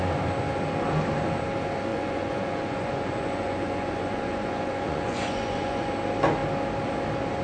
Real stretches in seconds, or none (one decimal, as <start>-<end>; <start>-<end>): 0.0-1.9; 5.9-7.4